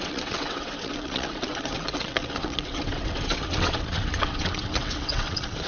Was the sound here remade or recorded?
remade